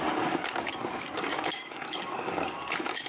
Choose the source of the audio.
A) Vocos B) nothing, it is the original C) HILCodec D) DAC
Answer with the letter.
D